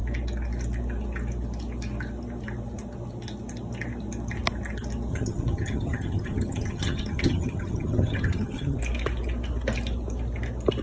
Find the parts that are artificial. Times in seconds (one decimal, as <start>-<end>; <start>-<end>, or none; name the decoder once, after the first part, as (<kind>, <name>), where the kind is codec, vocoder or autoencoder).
5.1-8.8 (vocoder, HiFi-GAN)